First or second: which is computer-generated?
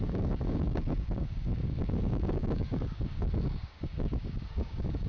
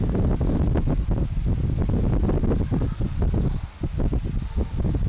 first